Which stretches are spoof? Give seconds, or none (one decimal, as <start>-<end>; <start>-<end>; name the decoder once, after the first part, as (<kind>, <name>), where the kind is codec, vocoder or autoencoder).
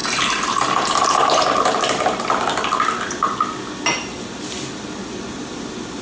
none